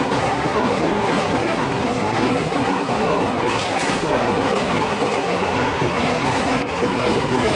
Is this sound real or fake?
fake